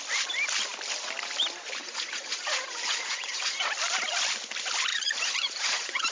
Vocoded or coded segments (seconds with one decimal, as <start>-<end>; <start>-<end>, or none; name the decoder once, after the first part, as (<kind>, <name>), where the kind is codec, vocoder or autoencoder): 1.8-3.7 (vocoder, Vocos); 4.9-6.1